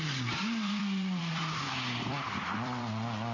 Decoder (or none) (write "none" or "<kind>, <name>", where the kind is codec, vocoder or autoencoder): vocoder, BigVGAN v2